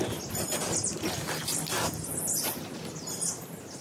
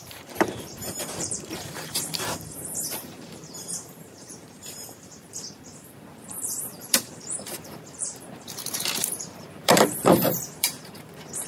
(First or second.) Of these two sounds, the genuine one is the first